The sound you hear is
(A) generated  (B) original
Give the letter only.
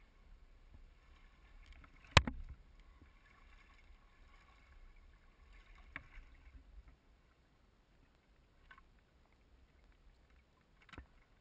B